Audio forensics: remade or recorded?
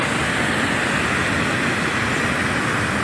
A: recorded